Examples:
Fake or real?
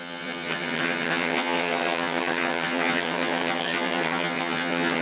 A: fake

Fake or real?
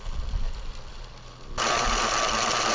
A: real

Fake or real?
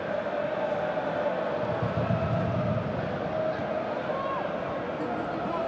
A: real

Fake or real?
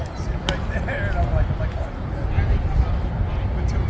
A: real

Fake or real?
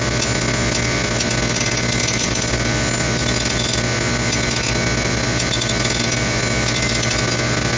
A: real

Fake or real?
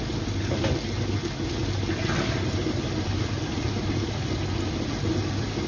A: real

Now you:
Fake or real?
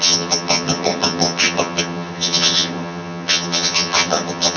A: fake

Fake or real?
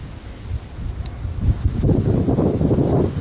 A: real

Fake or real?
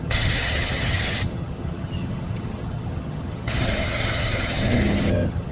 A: fake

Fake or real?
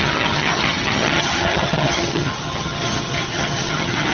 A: fake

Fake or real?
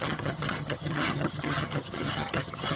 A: fake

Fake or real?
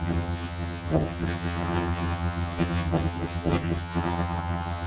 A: fake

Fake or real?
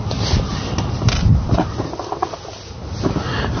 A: real